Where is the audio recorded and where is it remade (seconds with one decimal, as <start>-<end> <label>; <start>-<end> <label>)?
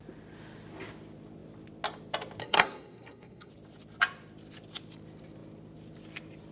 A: 0.0-2.4 recorded; 2.4-3.5 remade; 3.5-6.5 recorded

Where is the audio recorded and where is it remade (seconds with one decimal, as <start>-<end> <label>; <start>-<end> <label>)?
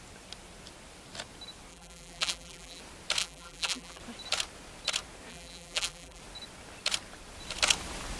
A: 0.0-1.7 recorded; 1.7-2.8 remade; 2.8-3.2 recorded; 3.2-4.0 remade; 4.0-5.3 recorded; 5.3-6.2 remade; 6.2-8.2 recorded